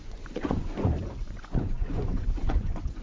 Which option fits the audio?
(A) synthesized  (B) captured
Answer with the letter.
A